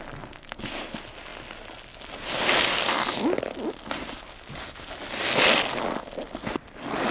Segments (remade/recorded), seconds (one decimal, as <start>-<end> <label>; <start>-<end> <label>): 0.0-7.1 recorded